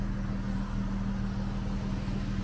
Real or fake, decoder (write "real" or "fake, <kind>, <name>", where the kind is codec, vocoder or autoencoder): real